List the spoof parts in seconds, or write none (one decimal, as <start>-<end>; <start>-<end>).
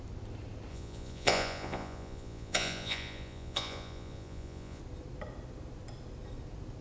0.7-4.8